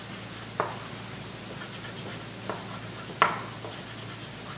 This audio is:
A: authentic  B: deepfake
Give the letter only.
A